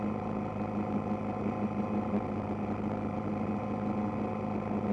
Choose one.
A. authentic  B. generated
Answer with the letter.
A